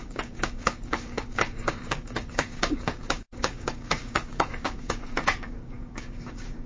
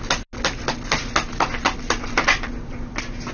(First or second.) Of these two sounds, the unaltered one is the second